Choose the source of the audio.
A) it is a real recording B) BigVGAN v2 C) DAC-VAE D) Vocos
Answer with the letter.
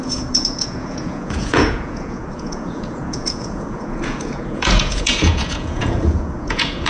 D